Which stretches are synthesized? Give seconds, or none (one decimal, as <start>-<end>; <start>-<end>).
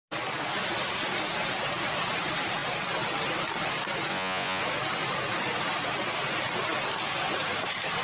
4.1-4.6